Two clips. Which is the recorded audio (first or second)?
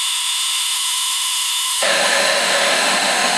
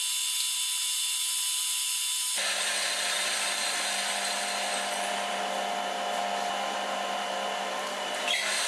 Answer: second